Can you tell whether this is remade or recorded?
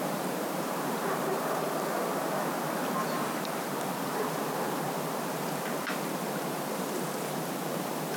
remade